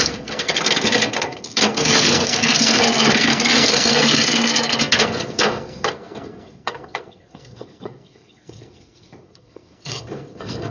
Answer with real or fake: fake